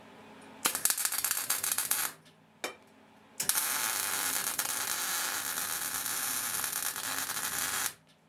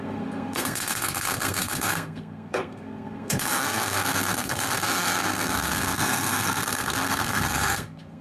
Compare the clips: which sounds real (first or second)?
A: first